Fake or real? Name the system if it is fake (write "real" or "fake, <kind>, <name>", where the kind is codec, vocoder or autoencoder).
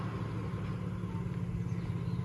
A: real